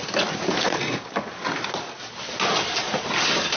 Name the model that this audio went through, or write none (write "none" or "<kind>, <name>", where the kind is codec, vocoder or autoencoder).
none